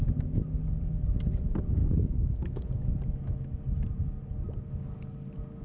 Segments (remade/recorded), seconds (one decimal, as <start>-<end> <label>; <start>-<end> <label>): 0.0-1.8 recorded; 1.8-3.0 remade; 3.0-5.6 recorded